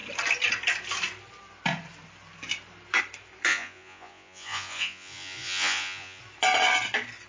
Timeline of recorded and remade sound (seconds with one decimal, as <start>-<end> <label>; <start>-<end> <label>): 0.0-3.5 recorded; 3.5-6.2 remade; 6.2-7.3 recorded